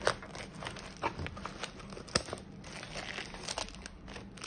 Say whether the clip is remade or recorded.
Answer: recorded